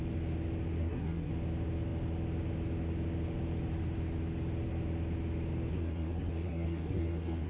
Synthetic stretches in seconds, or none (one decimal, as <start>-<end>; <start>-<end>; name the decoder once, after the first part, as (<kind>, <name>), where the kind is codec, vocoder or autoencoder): 0.8-1.3 (codec, SNAC); 5.7-7.5